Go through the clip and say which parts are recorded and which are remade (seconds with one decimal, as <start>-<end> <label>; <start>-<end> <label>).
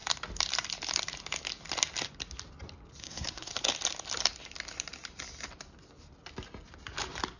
0.0-3.0 recorded; 3.0-3.5 remade; 3.5-7.4 recorded